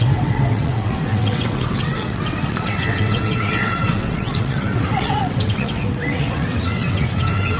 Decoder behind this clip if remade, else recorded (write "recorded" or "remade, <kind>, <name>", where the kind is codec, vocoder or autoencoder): remade, vocoder, WaveNeXt